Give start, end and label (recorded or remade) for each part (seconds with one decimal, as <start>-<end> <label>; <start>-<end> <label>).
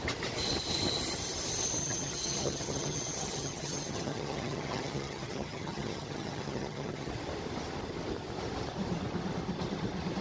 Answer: 0.0-1.8 recorded; 1.8-7.1 remade; 7.1-10.2 recorded